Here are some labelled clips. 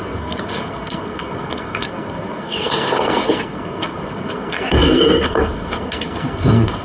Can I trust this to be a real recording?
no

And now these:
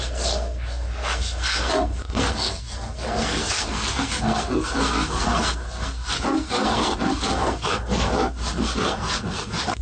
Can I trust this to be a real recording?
no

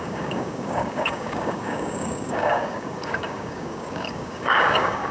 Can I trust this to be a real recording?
no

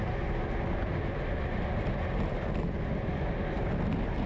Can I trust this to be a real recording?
yes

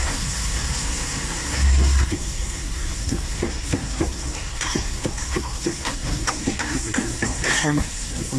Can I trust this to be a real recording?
no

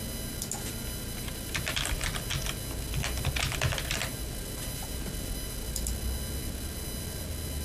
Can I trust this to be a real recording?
yes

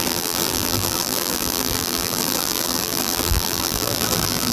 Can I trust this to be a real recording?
no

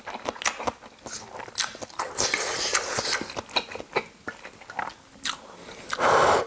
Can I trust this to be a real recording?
yes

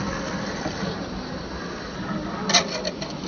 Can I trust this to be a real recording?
yes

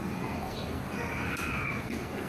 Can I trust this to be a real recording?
no